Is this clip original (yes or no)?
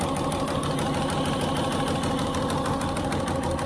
yes